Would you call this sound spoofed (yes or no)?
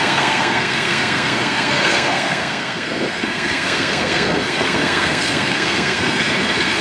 yes